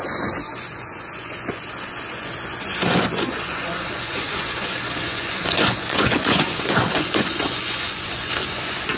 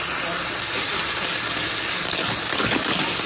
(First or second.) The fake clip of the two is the first